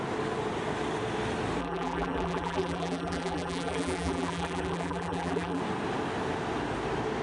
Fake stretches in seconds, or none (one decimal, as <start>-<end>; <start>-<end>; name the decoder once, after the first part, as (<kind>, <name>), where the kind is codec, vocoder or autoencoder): 1.6-5.6 (vocoder, BigVGAN v2)